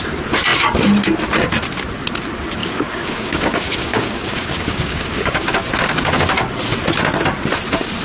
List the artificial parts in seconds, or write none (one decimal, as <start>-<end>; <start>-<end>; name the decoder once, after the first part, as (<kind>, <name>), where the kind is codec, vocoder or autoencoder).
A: 2.6-5.5 (codec, DAC)